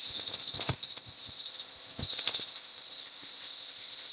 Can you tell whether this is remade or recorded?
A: remade